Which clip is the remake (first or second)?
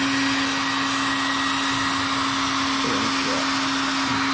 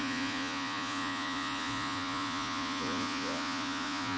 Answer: second